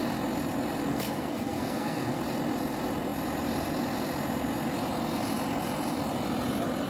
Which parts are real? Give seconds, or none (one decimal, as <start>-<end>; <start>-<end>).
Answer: 0.0-0.9; 2.2-6.9